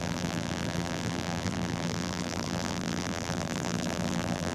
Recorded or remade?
remade